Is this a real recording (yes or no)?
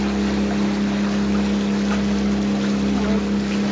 yes